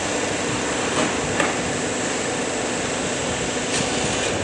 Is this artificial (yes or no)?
no